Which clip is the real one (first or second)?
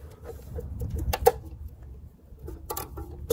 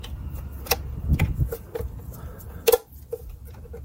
first